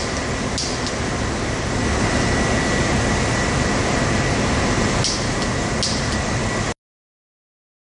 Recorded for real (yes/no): yes